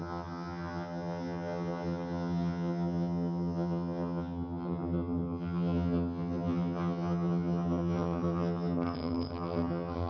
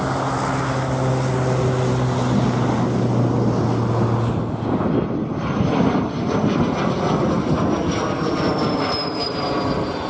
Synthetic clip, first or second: first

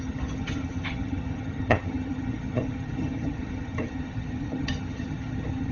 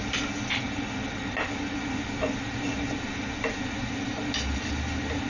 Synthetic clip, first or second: first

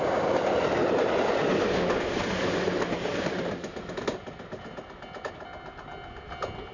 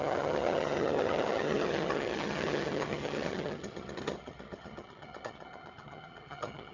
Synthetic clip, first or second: second